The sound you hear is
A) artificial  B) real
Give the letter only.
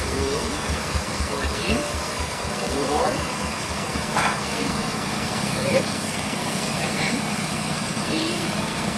A